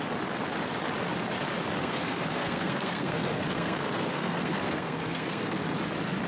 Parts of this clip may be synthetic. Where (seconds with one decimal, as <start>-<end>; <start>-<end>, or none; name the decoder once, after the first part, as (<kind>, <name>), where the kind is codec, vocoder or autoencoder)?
1.8-5.6 (codec, SNAC)